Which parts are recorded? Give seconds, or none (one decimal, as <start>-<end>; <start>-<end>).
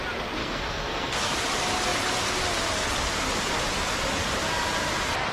0.0-0.4; 1.3-5.3